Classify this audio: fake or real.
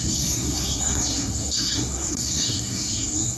fake